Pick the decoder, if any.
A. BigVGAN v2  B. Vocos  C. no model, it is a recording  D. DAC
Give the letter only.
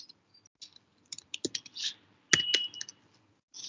C